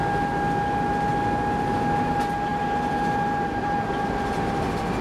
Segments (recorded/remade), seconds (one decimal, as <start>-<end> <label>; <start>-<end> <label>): 0.0-5.0 recorded